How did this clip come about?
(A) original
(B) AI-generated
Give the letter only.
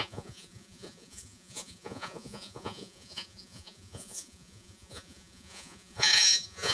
B